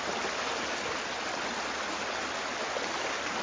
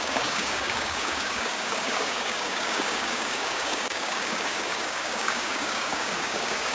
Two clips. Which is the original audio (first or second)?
first